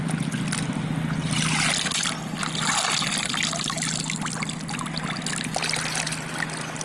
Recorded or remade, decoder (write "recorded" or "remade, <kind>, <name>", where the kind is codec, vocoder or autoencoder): recorded